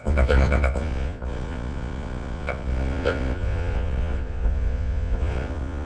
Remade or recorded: remade